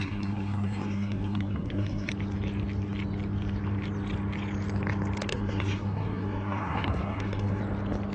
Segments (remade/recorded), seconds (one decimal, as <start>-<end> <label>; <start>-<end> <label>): 0.0-2.1 remade; 2.1-5.3 recorded; 5.3-7.6 remade; 7.6-8.1 recorded